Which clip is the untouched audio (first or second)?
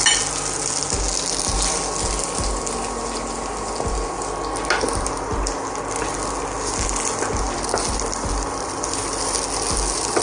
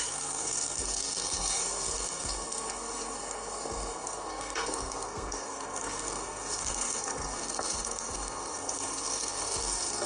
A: first